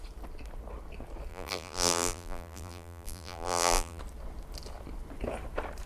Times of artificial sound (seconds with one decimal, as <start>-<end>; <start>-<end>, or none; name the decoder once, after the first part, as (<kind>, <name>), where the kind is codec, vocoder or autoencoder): 1.3-4.0 (vocoder, BigVGAN v2)